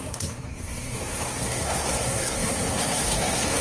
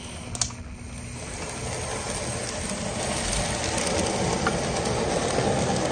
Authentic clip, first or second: second